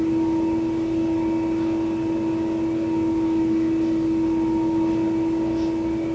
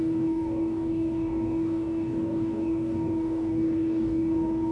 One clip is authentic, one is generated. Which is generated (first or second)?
second